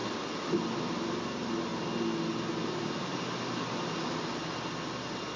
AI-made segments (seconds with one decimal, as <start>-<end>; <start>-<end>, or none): none

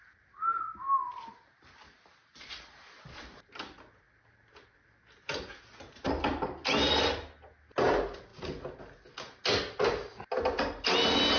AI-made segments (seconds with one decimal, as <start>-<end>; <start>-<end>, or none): none

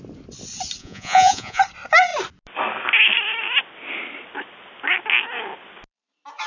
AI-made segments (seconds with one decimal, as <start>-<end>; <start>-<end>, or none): 0.8-1.6

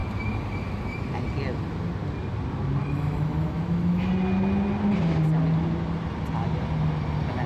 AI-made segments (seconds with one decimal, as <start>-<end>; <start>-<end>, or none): 2.8-4.1

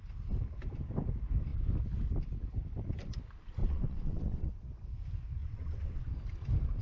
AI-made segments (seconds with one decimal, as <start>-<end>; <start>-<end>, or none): 3.6-4.5; 5.4-6.0

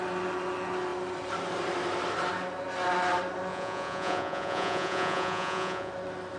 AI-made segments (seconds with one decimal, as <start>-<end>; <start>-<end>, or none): 3.5-5.9

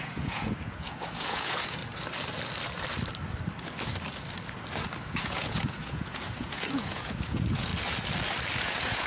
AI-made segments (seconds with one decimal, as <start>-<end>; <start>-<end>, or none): 0.0-1.8; 5.2-7.7; 8.6-9.1